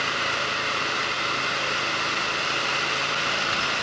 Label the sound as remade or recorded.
recorded